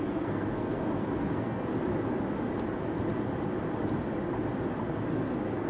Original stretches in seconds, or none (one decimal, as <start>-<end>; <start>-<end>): 1.7-5.1